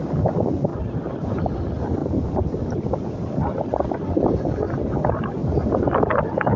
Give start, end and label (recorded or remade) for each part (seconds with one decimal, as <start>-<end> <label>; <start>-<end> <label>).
0.0-0.7 recorded; 0.7-1.4 remade; 1.4-2.0 recorded; 2.0-4.4 remade; 4.4-5.4 recorded; 5.4-6.0 remade; 6.0-6.6 recorded